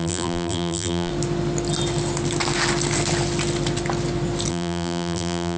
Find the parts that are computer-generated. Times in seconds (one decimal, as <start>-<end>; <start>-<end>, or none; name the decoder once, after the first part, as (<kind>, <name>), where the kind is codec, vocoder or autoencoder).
0.0-1.1 (vocoder, BigVGAN v2); 4.5-5.6